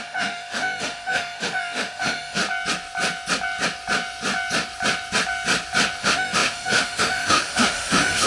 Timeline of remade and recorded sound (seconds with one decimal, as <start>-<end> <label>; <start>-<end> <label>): 0.0-2.4 remade; 2.4-6.0 recorded; 6.0-8.3 remade